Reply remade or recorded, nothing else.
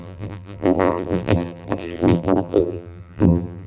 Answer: remade